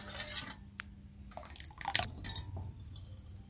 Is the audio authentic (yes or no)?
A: yes